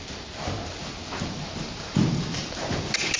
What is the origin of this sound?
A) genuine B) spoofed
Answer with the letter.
A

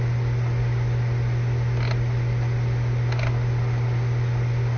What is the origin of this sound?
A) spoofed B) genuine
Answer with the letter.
B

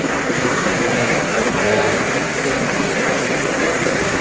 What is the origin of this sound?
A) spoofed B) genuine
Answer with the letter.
A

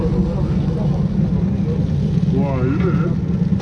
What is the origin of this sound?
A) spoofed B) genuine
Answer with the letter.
B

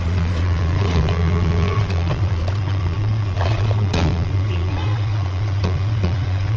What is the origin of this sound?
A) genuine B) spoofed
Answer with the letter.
B